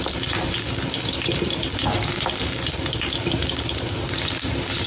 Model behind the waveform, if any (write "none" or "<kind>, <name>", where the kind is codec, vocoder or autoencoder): none